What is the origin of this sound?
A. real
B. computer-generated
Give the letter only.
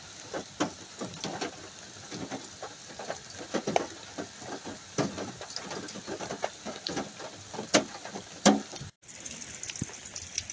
A